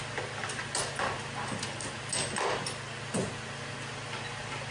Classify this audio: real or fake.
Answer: real